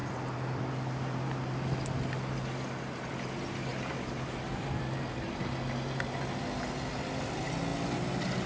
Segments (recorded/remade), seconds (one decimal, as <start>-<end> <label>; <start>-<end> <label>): 0.0-0.6 remade; 0.6-3.7 recorded; 3.7-4.8 remade; 4.8-8.5 recorded